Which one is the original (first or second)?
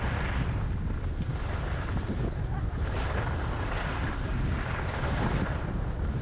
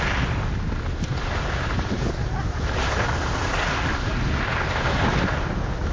second